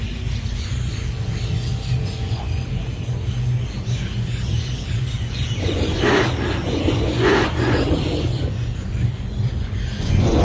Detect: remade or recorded remade